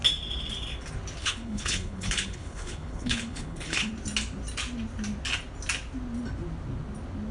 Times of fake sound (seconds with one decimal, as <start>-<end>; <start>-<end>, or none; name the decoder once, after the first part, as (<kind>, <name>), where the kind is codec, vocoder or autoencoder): 1.2-3.9 (codec, HILCodec)